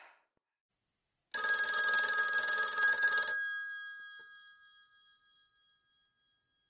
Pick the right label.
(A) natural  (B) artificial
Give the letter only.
A